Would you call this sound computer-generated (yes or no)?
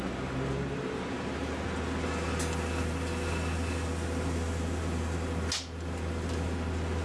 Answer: no